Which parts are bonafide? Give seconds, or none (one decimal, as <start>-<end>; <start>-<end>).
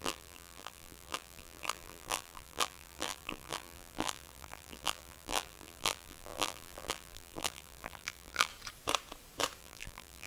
8.5-9.6